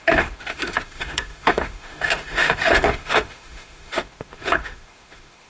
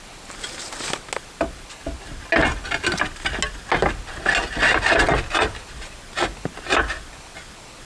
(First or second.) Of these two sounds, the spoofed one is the first